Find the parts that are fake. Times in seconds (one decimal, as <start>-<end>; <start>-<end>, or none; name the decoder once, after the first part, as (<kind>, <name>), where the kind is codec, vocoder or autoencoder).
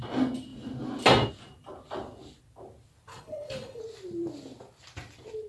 3.1-3.8 (codec, HILCodec)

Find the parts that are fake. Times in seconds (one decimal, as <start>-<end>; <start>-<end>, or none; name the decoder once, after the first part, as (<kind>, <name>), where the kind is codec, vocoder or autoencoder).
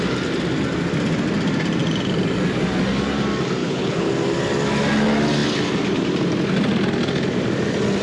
3.6-4.1 (codec, HILCodec)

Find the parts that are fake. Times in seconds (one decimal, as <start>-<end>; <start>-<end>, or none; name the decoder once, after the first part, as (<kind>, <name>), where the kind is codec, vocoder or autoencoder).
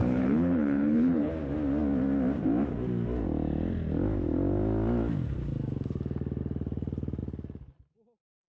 0.0-1.3 (codec, HILCodec)